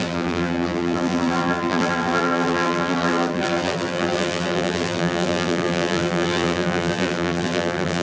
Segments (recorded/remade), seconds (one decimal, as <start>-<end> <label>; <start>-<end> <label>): 0.0-8.0 remade